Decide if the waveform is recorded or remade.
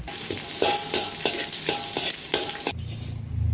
recorded